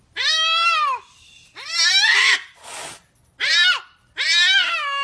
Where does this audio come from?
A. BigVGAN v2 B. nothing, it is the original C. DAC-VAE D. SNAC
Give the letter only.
B